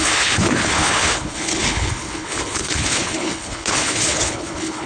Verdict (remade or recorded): remade